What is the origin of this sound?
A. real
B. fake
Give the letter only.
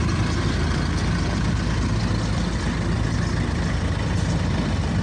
A